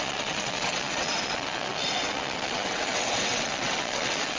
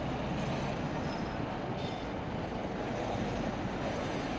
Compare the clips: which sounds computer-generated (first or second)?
first